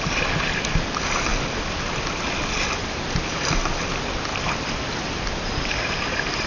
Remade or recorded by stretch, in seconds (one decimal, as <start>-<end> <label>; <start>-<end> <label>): 0.0-6.5 recorded